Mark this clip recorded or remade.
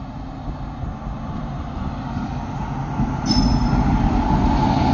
recorded